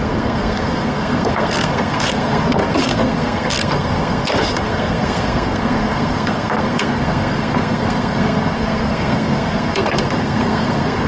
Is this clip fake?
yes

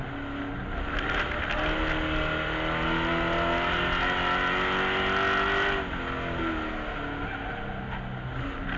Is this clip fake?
no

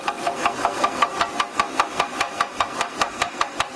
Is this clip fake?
yes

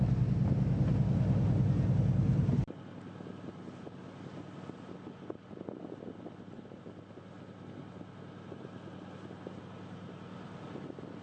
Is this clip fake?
no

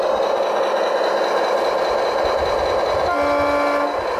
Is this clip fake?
no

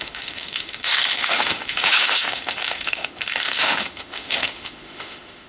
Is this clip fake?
yes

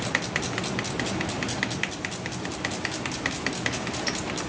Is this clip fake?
no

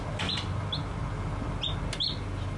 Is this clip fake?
no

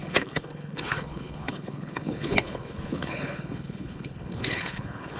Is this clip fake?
yes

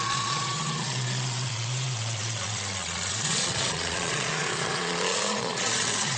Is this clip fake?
yes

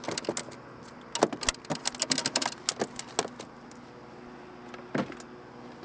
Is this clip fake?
no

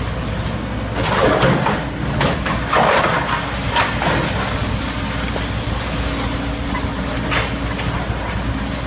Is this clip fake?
no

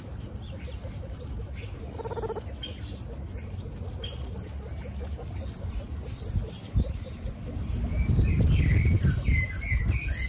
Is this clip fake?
no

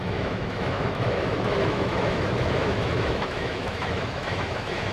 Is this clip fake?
yes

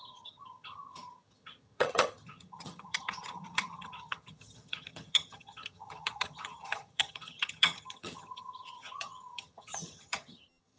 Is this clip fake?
yes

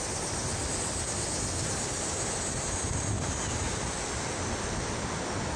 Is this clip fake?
no